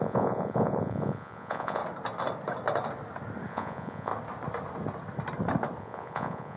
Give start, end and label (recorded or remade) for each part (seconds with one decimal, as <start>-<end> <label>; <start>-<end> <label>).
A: 0.0-1.8 remade; 1.8-3.5 recorded; 3.5-4.1 remade; 4.1-5.8 recorded; 5.8-6.6 remade